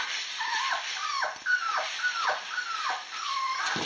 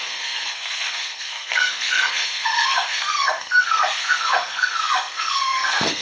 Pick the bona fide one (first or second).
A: first